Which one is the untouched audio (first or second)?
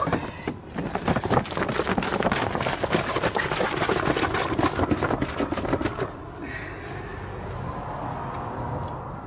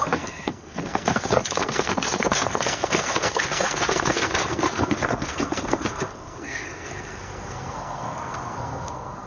first